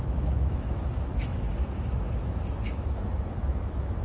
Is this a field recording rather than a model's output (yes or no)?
no